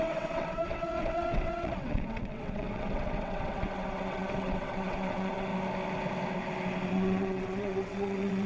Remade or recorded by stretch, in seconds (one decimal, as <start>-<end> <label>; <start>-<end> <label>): 0.0-5.5 remade; 5.5-6.9 recorded; 6.9-8.5 remade